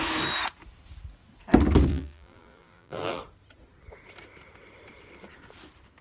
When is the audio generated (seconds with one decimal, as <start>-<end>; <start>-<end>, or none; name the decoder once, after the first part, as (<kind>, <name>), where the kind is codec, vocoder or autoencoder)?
1.9-3.2 (vocoder, BigVGAN v2)